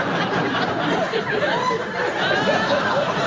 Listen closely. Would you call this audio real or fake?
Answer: fake